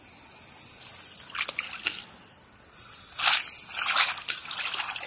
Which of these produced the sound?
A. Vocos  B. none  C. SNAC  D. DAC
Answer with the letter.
B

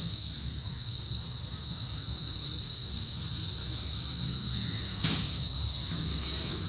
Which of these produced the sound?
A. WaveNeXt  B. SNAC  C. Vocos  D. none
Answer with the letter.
B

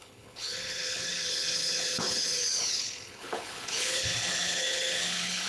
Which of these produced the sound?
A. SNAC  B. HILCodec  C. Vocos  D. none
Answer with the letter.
B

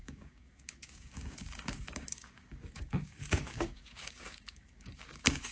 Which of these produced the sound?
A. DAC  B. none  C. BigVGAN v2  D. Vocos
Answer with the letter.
A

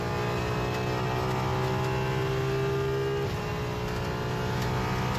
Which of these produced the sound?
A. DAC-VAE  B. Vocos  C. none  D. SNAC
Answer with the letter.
C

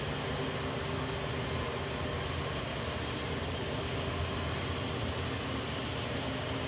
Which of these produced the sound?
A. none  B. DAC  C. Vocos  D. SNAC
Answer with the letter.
A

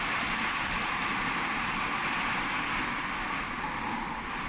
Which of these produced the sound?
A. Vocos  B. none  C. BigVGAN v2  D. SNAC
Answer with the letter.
B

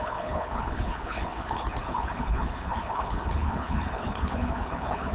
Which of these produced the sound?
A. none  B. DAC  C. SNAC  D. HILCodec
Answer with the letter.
D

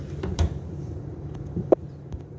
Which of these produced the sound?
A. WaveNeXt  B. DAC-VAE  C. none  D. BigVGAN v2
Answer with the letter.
D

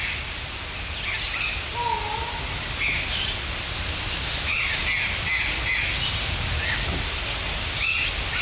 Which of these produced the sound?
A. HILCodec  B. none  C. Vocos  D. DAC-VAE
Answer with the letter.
B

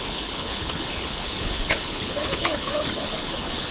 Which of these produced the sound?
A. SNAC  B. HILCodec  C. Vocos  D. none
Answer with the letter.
B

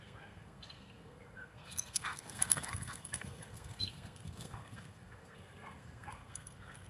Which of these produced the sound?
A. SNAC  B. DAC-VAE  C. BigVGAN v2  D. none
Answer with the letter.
A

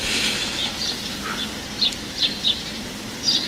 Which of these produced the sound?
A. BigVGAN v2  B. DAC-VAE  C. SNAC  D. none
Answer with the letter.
A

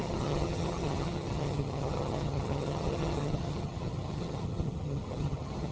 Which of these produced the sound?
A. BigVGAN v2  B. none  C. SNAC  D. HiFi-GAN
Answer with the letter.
D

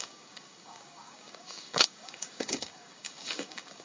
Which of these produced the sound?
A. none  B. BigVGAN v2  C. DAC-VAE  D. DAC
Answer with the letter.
D